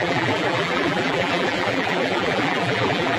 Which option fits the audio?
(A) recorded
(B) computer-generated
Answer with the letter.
B